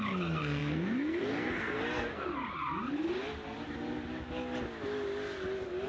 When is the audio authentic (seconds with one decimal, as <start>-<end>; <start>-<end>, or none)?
2.3-5.9